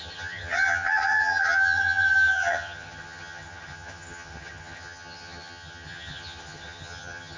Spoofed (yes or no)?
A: yes